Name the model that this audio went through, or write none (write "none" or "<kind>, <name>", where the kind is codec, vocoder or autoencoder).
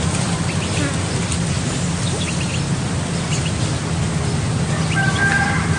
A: none